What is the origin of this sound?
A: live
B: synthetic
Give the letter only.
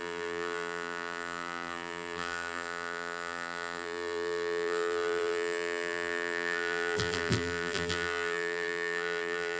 B